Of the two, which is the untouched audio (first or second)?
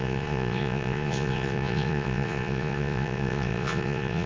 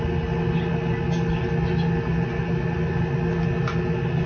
second